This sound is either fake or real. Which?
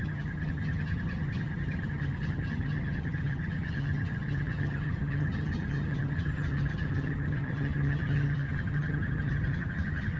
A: fake